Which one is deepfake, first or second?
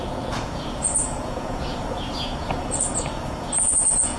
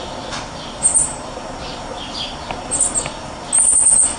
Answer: first